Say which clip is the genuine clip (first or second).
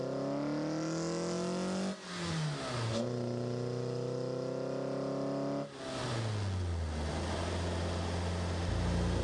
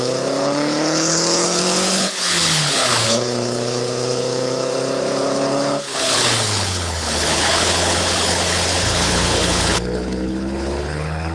first